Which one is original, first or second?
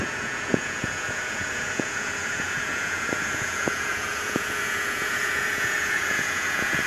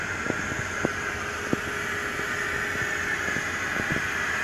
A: second